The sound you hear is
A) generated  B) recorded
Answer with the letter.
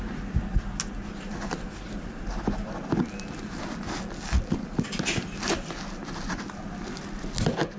B